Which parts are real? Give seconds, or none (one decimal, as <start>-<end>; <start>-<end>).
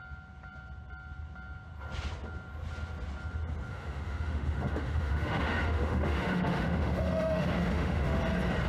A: 0.0-3.7; 8.2-8.7